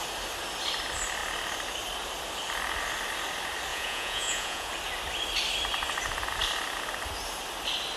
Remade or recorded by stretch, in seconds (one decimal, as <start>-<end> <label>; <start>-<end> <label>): 0.0-3.7 recorded; 3.7-4.7 remade; 4.7-8.0 recorded